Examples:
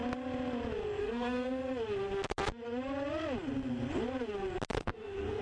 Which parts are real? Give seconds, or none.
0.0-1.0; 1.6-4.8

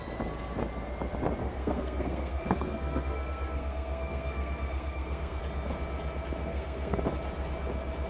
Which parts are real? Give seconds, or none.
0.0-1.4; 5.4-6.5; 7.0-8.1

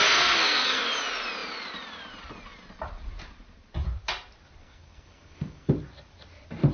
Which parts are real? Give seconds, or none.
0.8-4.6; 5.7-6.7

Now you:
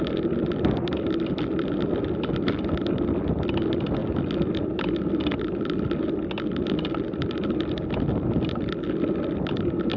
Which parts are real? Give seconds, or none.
0.0-10.0

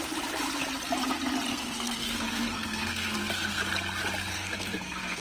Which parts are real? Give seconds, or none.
0.0-1.5; 3.6-4.3

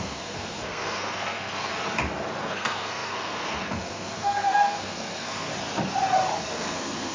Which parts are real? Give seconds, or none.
1.7-2.4; 5.5-6.4

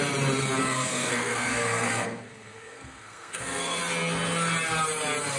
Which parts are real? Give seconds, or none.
0.0-0.6; 3.8-5.4

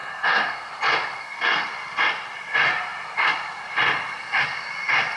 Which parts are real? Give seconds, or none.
0.7-1.2; 1.7-5.2